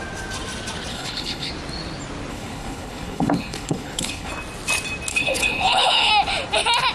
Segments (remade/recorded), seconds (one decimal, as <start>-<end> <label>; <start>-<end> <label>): 0.0-0.9 recorded; 0.9-1.5 remade; 1.5-2.3 recorded; 2.3-4.3 remade; 4.3-5.1 recorded; 5.1-6.1 remade; 6.1-6.9 recorded